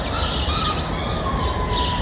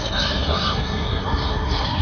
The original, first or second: first